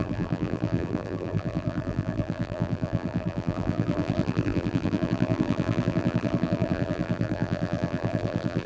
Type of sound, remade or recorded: remade